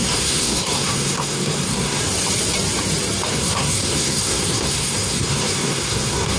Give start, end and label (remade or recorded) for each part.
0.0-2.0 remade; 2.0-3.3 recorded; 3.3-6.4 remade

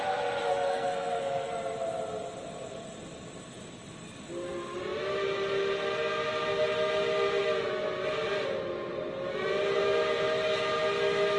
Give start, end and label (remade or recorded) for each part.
0.0-0.5 recorded; 0.5-1.5 remade; 1.5-11.4 recorded

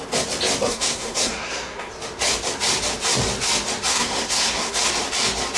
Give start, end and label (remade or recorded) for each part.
0.0-0.7 recorded; 0.7-1.9 remade; 1.9-3.9 recorded; 3.9-4.8 remade; 4.8-5.6 recorded

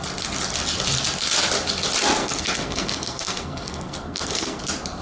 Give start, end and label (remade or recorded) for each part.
0.0-2.2 recorded; 2.2-4.6 remade; 4.6-5.0 recorded

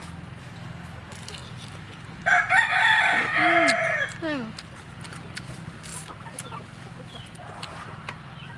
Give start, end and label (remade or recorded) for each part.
0.0-8.6 recorded

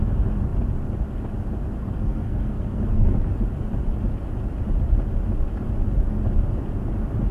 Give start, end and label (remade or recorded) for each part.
0.0-1.8 recorded; 1.8-3.3 remade; 3.3-7.3 recorded